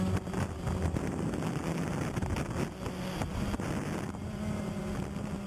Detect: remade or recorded recorded